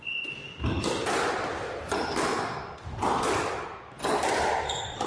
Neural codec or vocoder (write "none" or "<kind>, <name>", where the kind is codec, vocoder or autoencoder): none